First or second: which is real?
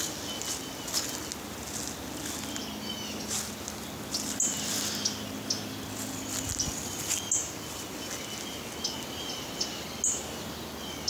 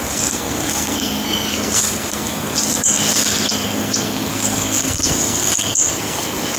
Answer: first